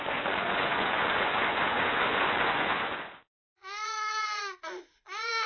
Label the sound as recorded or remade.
remade